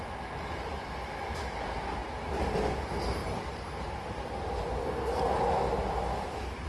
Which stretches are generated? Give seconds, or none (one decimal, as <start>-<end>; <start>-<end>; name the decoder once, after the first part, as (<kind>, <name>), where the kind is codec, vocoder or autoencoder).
4.8-5.3 (codec, SNAC)